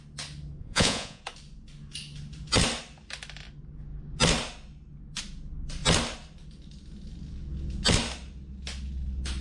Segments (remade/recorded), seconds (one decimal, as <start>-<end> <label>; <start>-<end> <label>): 0.0-0.6 recorded; 0.6-1.2 remade; 1.2-9.4 recorded